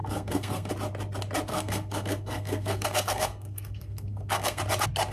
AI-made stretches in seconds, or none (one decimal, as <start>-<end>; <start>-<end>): 0.0-0.7; 1.5-4.6